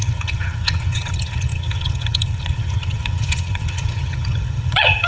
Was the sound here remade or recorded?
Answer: remade